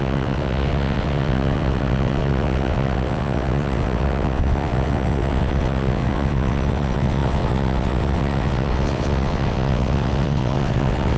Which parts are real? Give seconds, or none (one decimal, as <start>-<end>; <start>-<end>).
none